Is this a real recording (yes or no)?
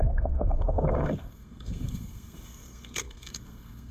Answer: no